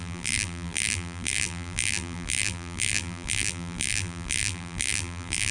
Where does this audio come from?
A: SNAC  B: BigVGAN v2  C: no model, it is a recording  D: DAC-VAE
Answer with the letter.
B